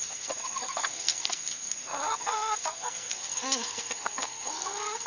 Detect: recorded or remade remade